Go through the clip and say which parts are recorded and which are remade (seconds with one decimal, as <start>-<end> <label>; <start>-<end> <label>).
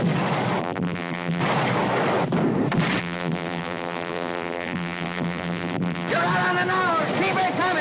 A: 0.0-0.6 recorded; 0.6-1.4 remade; 1.4-3.0 recorded; 3.0-6.1 remade; 6.1-7.8 recorded